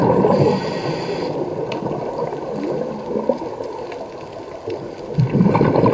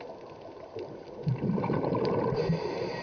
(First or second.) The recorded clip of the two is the first